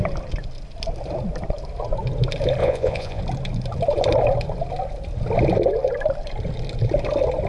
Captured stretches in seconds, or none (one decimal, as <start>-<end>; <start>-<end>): 0.0-2.6; 3.2-7.5